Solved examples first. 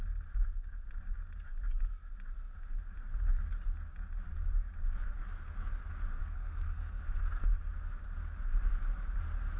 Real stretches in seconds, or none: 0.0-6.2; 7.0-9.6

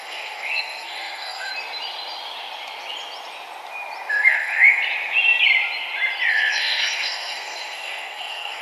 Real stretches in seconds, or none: 1.5-4.1; 4.8-6.3